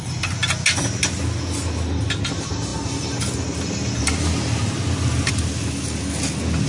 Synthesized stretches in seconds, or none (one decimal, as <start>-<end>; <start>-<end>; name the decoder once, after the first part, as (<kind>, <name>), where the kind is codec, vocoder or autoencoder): none